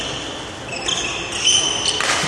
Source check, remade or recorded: recorded